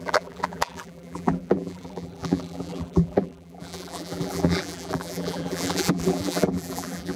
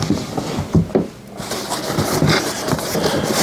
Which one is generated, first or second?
first